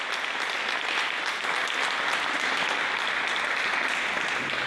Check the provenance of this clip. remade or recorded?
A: recorded